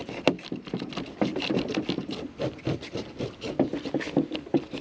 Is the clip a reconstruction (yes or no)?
no